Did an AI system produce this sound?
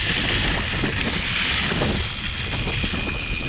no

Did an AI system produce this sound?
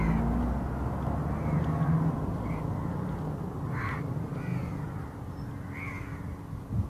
no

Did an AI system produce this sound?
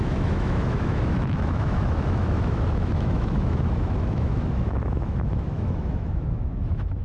yes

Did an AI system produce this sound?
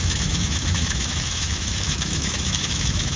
yes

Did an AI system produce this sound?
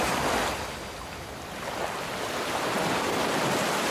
no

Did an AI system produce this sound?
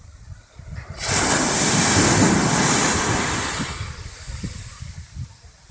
no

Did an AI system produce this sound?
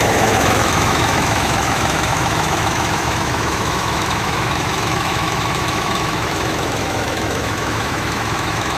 yes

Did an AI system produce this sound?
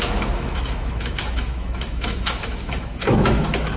yes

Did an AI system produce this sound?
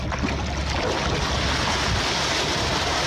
no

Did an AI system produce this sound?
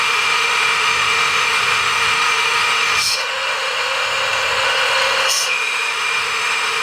yes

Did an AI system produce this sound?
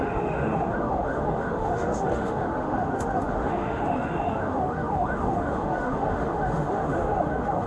yes